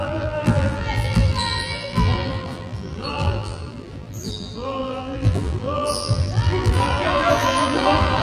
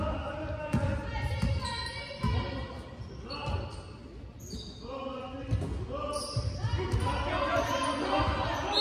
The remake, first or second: first